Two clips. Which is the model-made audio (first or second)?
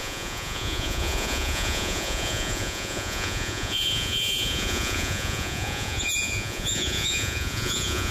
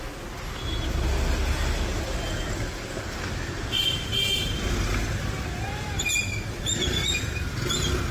first